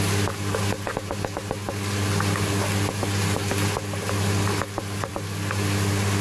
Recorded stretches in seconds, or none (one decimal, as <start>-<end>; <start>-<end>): 0.0-6.2